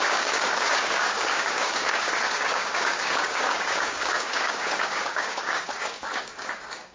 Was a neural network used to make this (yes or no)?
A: yes